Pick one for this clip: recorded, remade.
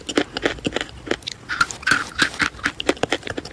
recorded